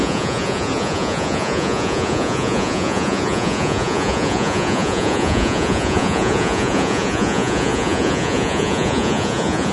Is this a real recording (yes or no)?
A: no